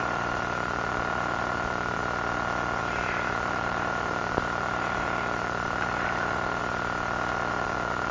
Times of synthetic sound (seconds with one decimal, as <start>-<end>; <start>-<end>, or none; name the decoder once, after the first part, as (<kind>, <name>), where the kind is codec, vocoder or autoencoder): 0.0-2.0 (vocoder, BigVGAN v2); 2.8-6.6; 7.5-8.1